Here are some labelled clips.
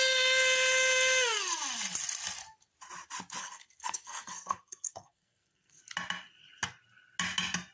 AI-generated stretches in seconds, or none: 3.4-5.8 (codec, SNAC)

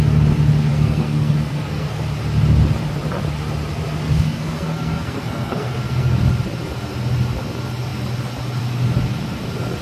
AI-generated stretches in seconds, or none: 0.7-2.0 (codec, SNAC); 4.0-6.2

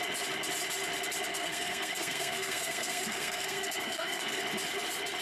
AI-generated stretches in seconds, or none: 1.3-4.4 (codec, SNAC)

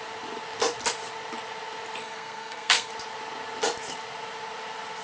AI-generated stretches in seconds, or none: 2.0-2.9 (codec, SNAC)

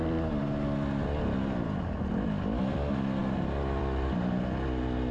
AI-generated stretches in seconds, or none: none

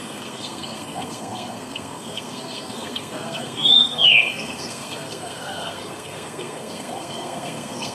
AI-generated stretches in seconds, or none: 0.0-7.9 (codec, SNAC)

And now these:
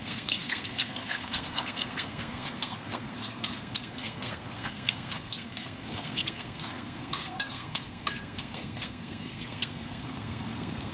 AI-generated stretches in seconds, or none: 0.0-10.9 (codec, SNAC)